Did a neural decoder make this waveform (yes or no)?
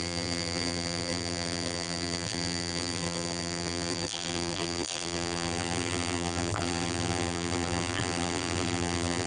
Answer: yes